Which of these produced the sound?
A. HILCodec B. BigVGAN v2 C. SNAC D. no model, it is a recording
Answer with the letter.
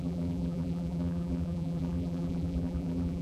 B